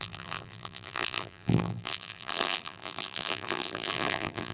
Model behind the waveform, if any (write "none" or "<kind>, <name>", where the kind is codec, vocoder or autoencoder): vocoder, BigVGAN v2